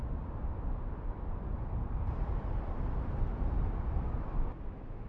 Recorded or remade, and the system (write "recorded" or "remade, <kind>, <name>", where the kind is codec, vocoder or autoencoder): recorded